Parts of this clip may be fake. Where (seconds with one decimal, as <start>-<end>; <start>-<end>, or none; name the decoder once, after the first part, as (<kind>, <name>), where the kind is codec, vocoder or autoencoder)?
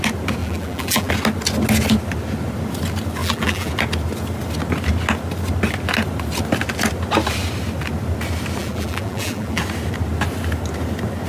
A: 0.4-1.1 (vocoder, BigVGAN v2); 3.2-3.7; 8.6-9.6